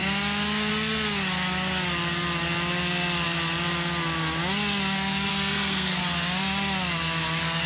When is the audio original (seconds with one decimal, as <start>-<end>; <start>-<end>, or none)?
0.0-5.3; 6.0-7.7